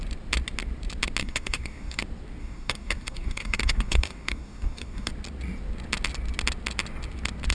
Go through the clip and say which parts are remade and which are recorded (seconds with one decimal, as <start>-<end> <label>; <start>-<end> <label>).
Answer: 0.0-1.2 recorded; 1.2-2.0 remade; 2.0-2.4 recorded; 2.4-5.1 remade; 5.1-7.5 recorded